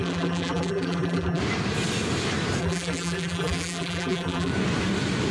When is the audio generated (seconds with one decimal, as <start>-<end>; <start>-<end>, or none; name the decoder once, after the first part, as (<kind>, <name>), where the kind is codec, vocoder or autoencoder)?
0.0-1.4 (vocoder, BigVGAN v2); 2.6-4.5